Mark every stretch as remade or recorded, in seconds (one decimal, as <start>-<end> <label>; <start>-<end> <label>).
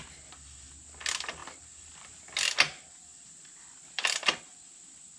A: 0.0-1.4 recorded; 1.4-4.4 remade; 4.4-5.2 recorded